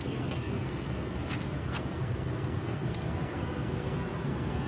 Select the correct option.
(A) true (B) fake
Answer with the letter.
B